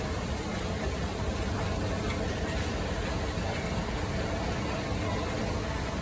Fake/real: real